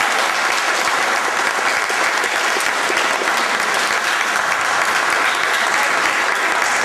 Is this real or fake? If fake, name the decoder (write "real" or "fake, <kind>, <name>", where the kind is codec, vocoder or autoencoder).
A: real